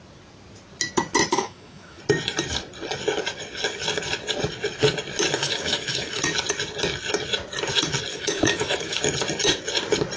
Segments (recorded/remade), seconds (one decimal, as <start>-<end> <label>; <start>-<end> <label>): 0.0-1.3 recorded; 1.3-2.0 remade; 2.0-5.4 recorded; 5.4-6.2 remade; 6.2-8.1 recorded; 8.1-9.0 remade; 9.0-10.2 recorded